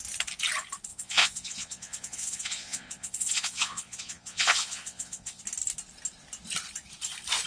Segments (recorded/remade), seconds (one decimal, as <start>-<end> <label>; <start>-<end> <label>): 0.0-0.9 recorded; 0.9-5.4 remade; 5.4-7.5 recorded